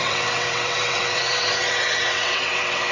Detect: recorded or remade remade